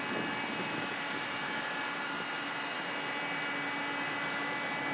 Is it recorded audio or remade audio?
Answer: recorded